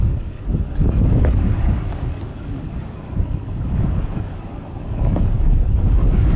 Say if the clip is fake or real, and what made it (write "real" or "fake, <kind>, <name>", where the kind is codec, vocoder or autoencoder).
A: fake, codec, DAC